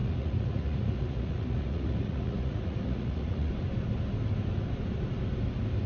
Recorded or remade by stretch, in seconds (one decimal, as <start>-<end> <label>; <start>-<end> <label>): 0.0-3.5 remade; 3.5-5.9 recorded